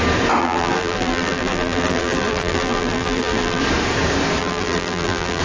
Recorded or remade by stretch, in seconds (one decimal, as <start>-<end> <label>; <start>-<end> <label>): 0.0-0.4 recorded; 0.4-3.6 remade; 3.6-4.4 recorded; 4.4-5.4 remade

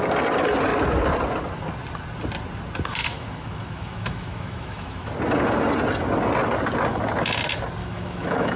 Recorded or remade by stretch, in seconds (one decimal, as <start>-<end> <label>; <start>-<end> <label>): 0.0-3.0 recorded; 3.0-5.1 remade; 5.1-7.8 recorded; 7.8-8.6 remade

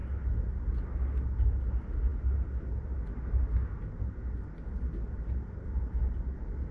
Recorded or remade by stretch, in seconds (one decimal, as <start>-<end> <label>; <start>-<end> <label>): 0.0-6.7 recorded

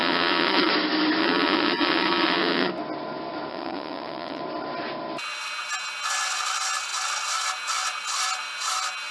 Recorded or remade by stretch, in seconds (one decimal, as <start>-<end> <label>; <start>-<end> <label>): 0.0-0.7 remade; 0.7-1.2 recorded; 1.2-2.7 remade; 2.7-3.5 recorded; 3.5-4.4 remade; 4.4-9.1 recorded

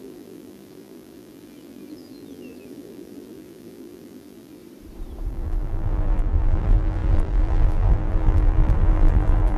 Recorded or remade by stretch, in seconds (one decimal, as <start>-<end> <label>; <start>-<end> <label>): 0.0-4.6 remade; 4.6-5.3 recorded; 5.3-9.6 remade

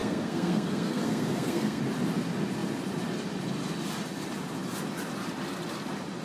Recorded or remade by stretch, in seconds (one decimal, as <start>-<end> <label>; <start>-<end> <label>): 0.0-1.8 remade; 1.8-6.2 recorded